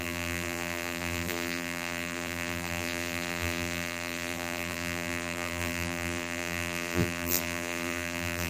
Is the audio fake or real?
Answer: fake